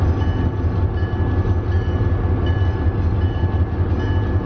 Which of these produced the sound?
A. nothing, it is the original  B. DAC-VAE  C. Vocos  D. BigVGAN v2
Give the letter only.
A